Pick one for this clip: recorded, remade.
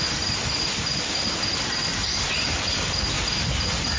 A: recorded